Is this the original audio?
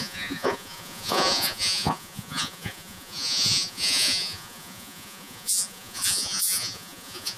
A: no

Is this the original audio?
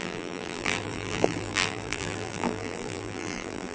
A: no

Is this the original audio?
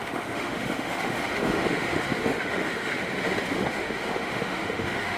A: no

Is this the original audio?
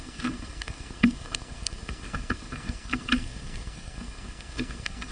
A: no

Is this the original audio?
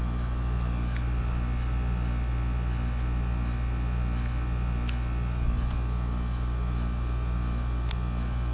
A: yes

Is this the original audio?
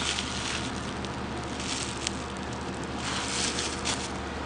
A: yes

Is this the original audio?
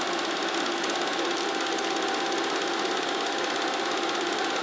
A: yes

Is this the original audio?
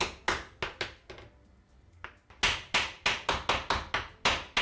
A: yes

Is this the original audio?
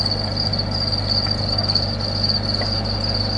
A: yes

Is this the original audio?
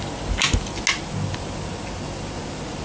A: yes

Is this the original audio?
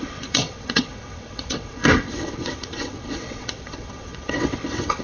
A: no